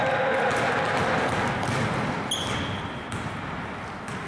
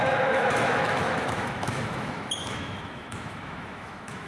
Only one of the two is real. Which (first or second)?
first